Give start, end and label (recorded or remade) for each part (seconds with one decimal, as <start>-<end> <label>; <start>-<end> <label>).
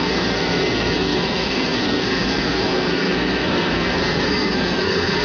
0.0-5.2 remade